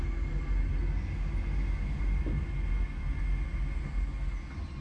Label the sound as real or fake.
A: real